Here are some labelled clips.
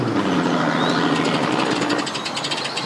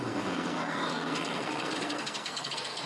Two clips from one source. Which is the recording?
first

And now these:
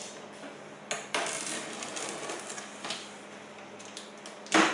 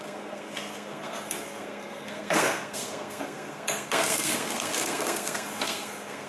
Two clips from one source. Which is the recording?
first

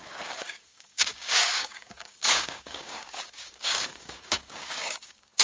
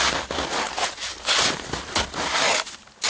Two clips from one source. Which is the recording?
second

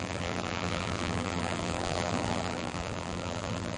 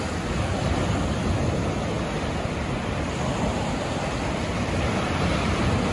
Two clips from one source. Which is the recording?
second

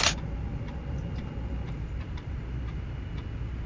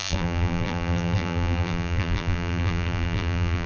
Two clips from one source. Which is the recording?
first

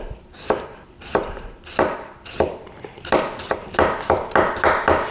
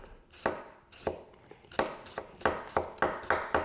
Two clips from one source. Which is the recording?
second